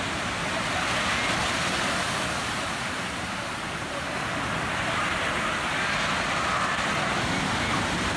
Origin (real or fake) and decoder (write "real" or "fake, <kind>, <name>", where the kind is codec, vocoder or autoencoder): real